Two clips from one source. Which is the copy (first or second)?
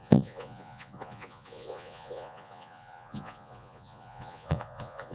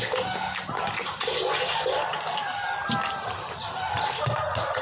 first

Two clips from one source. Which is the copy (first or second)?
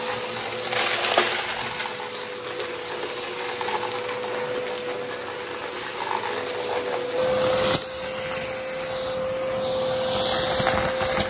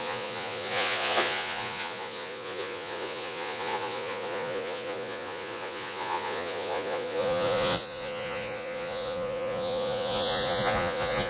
second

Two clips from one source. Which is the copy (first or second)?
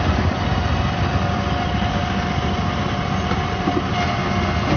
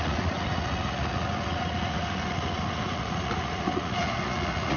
second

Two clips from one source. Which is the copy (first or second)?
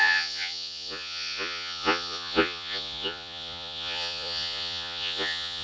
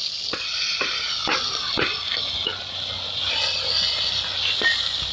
first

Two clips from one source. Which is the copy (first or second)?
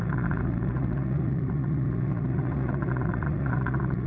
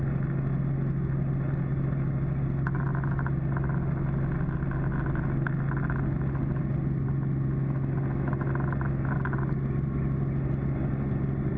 first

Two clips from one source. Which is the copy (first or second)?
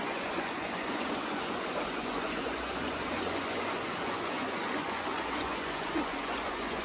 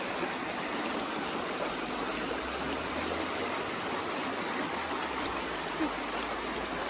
first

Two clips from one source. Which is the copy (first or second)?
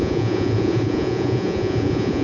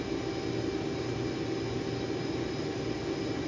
first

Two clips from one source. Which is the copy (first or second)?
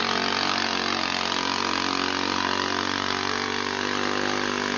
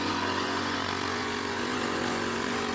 second